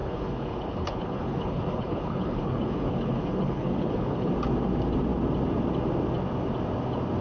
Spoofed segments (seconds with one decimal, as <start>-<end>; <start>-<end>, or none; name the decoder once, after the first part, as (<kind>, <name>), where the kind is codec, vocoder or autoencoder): 0.0-4.3 (codec, HILCodec)